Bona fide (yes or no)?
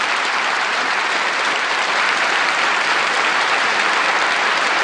no